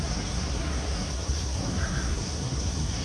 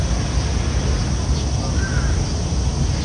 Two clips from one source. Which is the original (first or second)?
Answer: second